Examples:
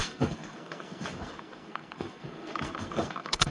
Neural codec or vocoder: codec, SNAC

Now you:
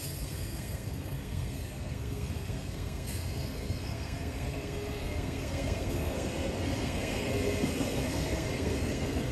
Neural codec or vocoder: codec, SNAC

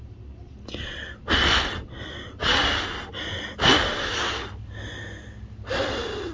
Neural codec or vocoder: none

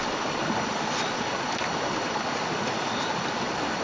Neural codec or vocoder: none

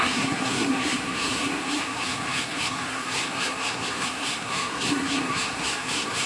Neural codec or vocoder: codec, SNAC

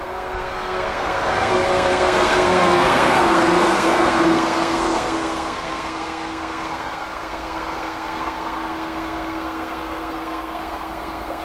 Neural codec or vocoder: codec, SNAC